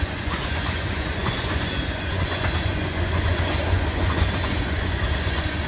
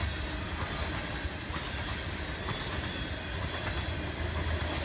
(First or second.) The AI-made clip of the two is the first